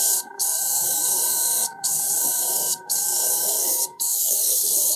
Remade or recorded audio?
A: remade